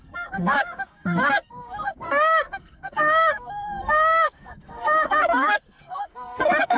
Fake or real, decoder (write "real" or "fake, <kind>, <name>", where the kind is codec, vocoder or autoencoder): fake, codec, SNAC